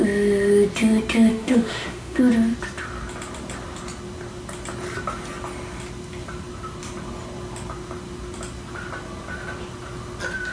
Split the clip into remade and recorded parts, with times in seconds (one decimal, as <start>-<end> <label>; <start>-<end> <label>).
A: 0.0-1.3 recorded; 1.3-2.2 remade; 2.2-10.5 recorded